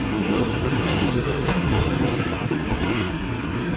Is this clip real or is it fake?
fake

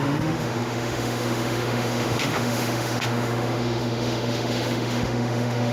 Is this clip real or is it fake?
fake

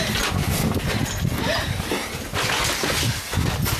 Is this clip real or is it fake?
real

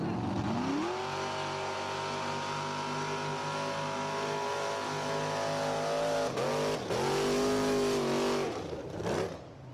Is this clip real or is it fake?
real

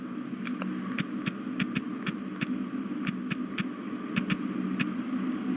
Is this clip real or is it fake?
real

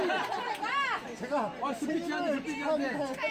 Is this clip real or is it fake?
real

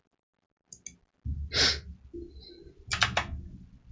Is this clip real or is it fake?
real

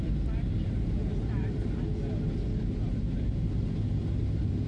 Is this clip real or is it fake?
real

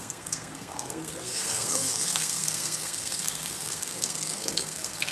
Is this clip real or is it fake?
fake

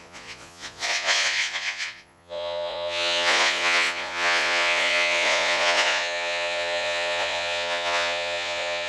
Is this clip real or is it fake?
fake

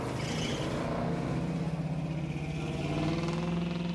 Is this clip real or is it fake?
real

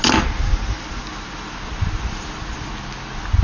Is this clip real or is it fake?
real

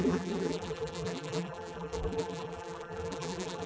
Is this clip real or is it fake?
fake